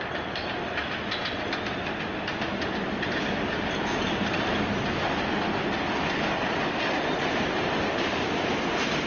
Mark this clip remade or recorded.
recorded